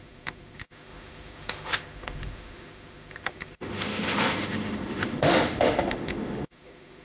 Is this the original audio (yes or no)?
no